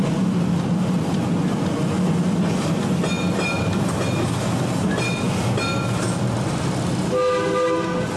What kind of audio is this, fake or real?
real